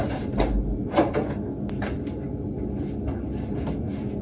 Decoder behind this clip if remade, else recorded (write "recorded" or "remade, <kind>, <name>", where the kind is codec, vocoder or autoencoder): recorded